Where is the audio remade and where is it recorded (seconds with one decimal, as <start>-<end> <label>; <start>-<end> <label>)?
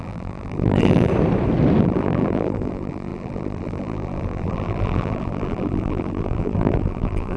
0.0-1.1 remade; 1.1-1.8 recorded; 1.8-7.4 remade